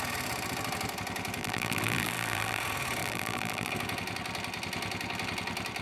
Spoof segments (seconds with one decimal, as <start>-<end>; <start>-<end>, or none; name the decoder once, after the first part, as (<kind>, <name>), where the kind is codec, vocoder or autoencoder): 1.4-2.6 (vocoder, BigVGAN v2); 3.0-3.7